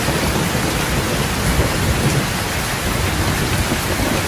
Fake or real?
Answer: real